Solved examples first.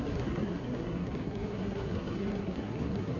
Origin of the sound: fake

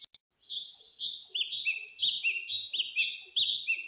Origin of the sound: real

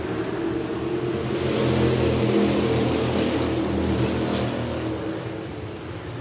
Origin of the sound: real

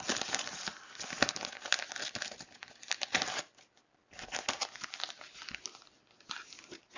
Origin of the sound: real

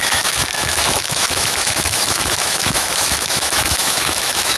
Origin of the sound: fake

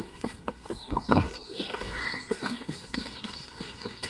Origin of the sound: fake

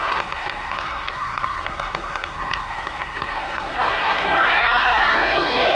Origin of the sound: fake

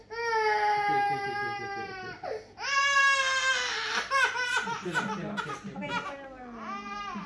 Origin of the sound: real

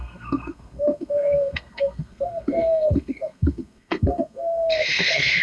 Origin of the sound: fake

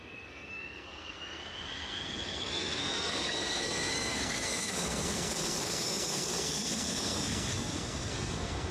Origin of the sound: fake